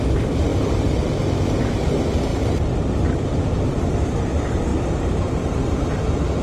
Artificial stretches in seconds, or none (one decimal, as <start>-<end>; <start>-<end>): 2.3-3.9; 4.7-6.4